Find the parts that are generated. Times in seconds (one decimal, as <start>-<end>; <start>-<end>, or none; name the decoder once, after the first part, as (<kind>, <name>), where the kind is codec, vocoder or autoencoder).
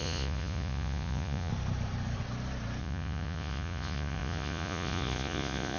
0.0-1.5 (vocoder, Vocos); 2.8-5.8